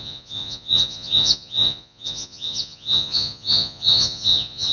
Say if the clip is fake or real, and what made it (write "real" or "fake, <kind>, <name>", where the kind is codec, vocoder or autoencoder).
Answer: fake, vocoder, Vocos